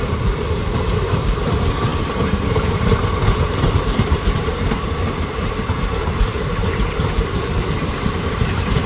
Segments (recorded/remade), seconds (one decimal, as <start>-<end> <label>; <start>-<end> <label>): 0.0-8.9 remade